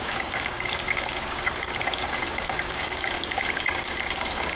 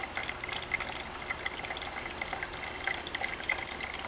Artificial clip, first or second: first